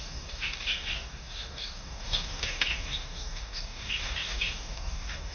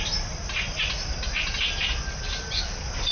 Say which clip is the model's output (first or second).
first